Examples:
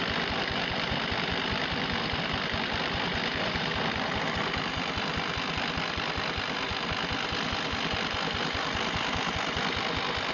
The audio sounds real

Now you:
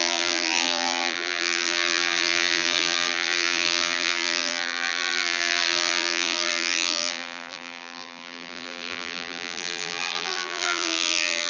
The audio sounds fake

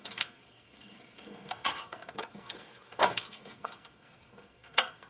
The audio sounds fake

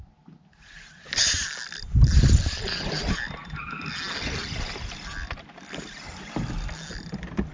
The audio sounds real